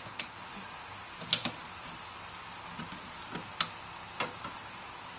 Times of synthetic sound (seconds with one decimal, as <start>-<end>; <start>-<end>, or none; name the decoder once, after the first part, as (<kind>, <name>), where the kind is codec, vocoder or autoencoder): none